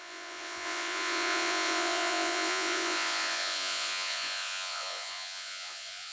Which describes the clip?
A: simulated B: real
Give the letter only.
A